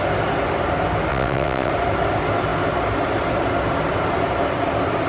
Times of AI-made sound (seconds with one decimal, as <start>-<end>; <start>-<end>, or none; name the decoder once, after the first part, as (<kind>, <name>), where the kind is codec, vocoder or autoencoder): 1.1-1.7 (vocoder, WaveNeXt)